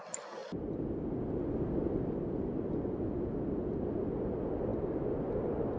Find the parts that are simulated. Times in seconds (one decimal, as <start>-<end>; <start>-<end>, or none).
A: none